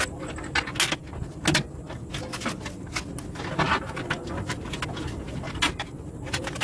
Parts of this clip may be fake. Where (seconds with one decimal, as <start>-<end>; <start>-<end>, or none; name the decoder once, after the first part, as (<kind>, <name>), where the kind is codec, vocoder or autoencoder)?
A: none